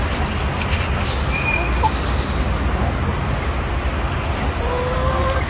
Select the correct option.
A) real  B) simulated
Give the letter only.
A